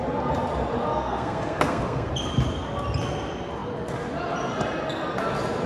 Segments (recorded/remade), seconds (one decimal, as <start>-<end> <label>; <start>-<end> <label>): 0.0-0.9 recorded; 0.9-2.1 remade; 2.1-5.7 recorded